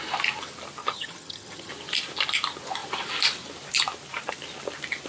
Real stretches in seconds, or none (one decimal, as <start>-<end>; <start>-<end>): 0.0-0.8; 1.7-5.1